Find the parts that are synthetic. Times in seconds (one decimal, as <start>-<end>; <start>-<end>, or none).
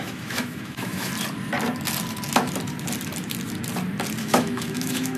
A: 0.0-1.1; 4.2-5.2